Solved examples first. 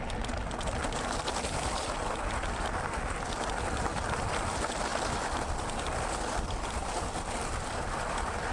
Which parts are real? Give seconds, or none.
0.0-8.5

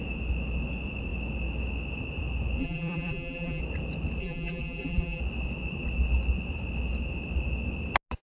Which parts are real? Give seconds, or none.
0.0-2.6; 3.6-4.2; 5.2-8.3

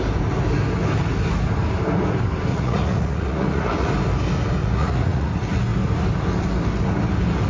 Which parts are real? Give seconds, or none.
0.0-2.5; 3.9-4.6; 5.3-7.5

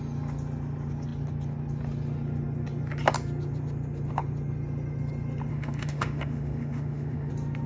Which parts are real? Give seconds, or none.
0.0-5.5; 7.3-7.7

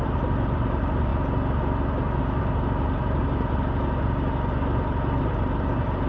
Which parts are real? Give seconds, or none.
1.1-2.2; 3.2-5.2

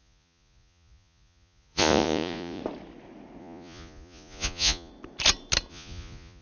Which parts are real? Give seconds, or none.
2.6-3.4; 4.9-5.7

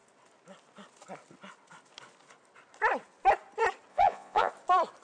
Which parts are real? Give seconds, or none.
0.0-3.9; 4.5-5.0